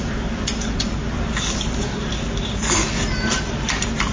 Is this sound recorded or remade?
recorded